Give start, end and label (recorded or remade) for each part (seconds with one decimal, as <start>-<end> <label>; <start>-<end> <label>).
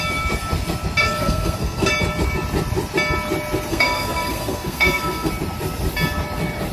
0.0-1.0 recorded; 1.0-1.9 remade; 1.9-3.7 recorded; 3.7-5.3 remade; 5.3-6.7 recorded